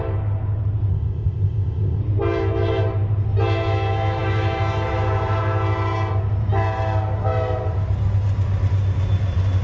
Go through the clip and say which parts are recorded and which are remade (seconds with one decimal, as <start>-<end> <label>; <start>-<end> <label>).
0.0-0.9 recorded; 0.9-2.0 remade; 2.0-9.6 recorded